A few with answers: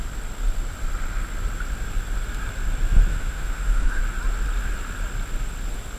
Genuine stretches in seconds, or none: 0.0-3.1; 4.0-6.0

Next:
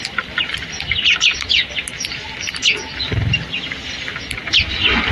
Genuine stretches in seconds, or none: 0.0-5.1

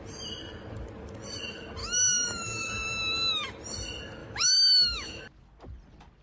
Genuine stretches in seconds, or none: 0.0-1.8; 2.7-4.2; 5.2-6.2

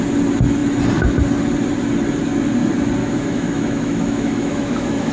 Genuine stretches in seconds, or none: 0.0-3.0

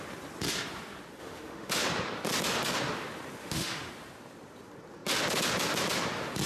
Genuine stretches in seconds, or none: 0.0-1.2; 1.7-3.4; 3.9-6.5

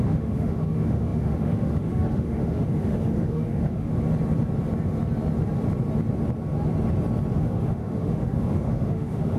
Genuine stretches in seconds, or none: 3.9-7.4

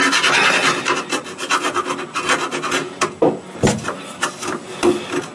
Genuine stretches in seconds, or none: 0.0-5.3